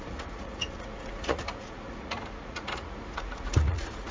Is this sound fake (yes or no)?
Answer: yes